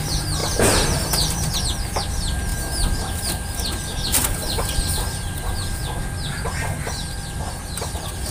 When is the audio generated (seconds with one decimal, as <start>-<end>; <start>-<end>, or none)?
0.4-1.5